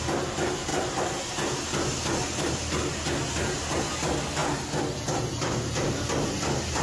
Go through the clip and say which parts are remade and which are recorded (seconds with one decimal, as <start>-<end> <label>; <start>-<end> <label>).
0.0-6.8 recorded